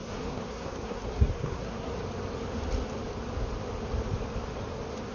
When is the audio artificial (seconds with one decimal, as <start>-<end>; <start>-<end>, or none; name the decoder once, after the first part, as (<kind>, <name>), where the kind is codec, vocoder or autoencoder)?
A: 0.0-1.9 (codec, SNAC)